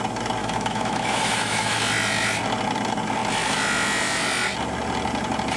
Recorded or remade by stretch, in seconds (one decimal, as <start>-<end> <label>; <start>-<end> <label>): 0.0-0.4 recorded; 0.4-1.8 remade; 1.8-5.6 recorded